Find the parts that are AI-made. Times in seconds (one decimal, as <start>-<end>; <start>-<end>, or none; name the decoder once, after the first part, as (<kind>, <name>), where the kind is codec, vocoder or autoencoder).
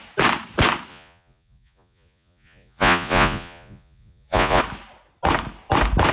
0.9-4.6 (vocoder, Vocos)